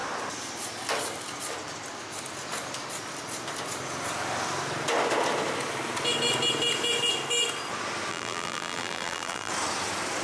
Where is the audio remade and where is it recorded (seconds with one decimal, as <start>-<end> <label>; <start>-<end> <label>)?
0.0-8.1 recorded; 8.1-9.5 remade; 9.5-10.2 recorded